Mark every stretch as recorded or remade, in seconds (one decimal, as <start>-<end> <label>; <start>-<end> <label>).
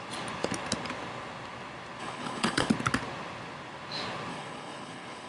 0.0-2.0 recorded; 2.0-2.7 remade; 2.7-4.3 recorded; 4.3-5.3 remade